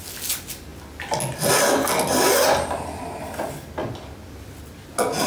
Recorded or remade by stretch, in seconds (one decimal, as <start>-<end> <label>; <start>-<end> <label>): 0.0-5.3 recorded